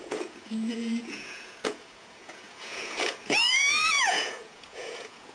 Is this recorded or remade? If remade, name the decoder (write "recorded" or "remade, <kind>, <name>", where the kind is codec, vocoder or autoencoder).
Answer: remade, vocoder, Vocos